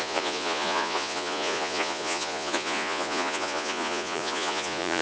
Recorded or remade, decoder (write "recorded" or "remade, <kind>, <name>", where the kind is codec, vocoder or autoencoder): remade, vocoder, Vocos